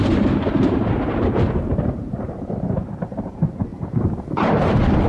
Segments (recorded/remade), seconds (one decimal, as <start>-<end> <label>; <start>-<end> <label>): 0.0-5.1 remade